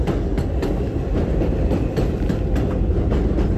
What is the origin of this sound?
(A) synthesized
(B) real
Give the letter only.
B